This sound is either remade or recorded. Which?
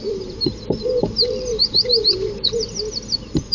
recorded